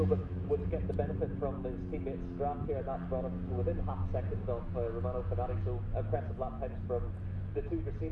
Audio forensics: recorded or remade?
recorded